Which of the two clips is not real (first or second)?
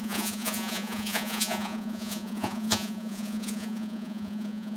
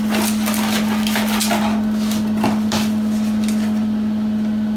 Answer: first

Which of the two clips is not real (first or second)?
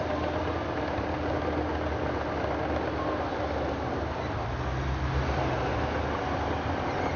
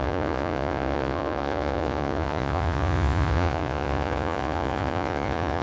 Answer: second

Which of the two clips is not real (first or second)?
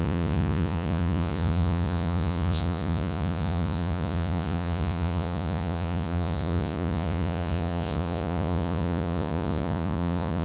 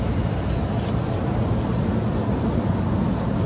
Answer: first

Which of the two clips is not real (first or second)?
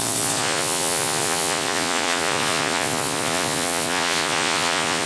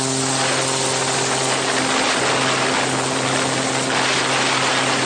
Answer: first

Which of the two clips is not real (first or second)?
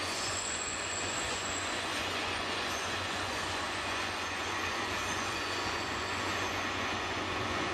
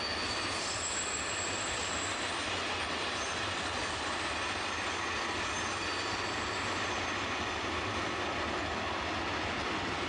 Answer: first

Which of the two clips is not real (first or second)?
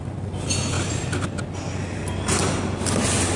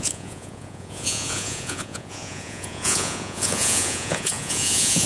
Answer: second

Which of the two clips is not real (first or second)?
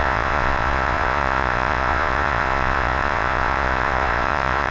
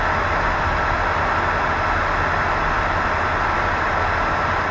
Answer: first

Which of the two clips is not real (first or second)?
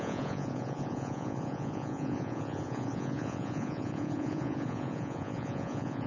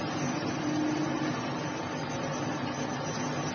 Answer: first